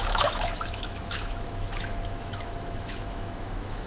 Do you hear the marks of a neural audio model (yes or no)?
yes